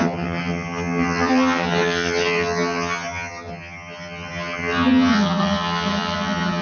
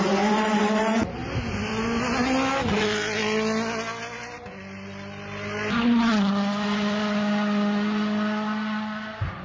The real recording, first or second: second